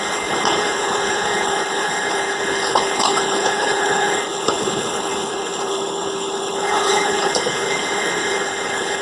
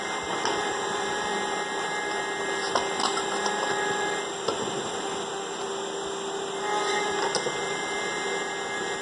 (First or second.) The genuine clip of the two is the second